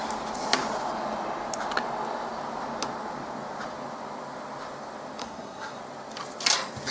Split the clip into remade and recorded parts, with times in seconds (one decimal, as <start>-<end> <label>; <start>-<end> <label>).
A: 0.0-5.2 recorded; 5.2-5.8 remade; 5.8-6.9 recorded